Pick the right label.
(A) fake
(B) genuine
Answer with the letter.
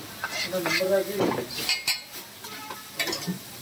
B